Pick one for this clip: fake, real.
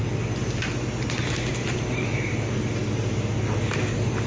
real